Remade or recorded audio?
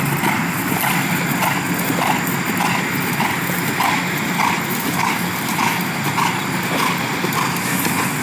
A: recorded